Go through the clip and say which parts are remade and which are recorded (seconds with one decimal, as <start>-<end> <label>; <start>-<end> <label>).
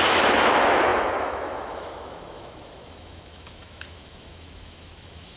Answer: 0.0-5.4 remade